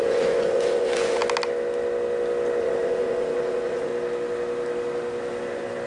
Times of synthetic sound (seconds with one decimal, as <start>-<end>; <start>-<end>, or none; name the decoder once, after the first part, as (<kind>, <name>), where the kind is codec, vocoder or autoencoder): 0.0-1.2 (vocoder, Vocos); 2.6-3.9